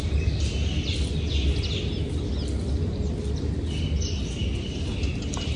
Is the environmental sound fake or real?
real